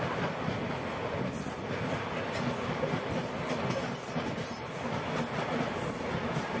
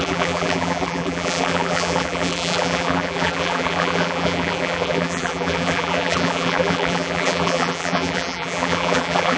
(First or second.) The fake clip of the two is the second